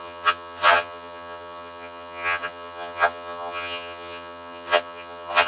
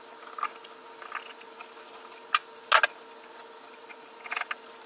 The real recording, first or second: second